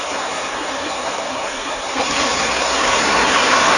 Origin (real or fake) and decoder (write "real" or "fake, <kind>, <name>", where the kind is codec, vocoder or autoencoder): fake, codec, SNAC